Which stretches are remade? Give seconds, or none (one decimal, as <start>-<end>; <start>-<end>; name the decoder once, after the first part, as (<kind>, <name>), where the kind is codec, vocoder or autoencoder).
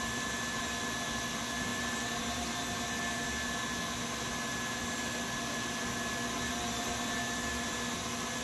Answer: none